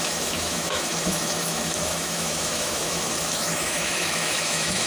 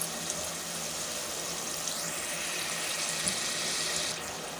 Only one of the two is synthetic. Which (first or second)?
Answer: first